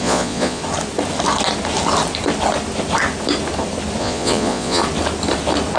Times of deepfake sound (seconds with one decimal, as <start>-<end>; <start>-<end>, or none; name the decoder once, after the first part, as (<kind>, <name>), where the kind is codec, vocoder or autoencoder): 0.0-0.6 (vocoder, Vocos); 4.0-4.8